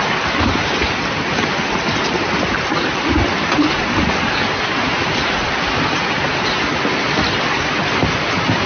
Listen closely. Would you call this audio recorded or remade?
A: recorded